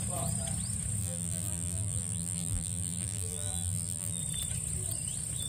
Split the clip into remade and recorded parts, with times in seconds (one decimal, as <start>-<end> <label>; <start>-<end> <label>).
0.0-1.0 recorded; 1.0-4.2 remade; 4.2-5.5 recorded